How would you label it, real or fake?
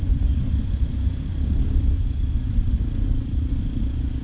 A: real